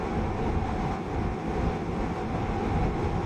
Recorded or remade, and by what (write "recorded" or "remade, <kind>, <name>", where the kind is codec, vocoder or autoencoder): recorded